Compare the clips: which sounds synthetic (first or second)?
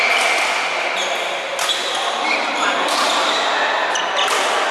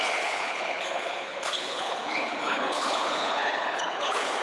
second